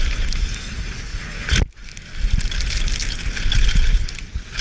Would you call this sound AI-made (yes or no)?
no